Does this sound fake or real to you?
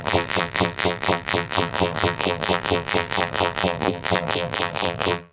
fake